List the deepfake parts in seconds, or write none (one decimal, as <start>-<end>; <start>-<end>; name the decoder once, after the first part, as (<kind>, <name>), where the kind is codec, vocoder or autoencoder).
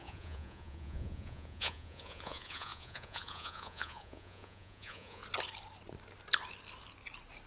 0.0-5.2 (vocoder, Vocos)